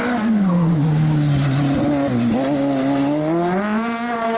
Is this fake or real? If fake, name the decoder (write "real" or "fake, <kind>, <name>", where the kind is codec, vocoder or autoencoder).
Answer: real